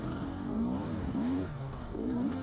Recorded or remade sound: remade